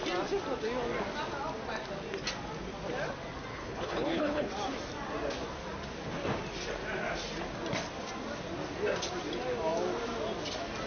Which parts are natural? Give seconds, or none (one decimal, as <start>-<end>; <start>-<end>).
0.0-3.5; 4.5-10.9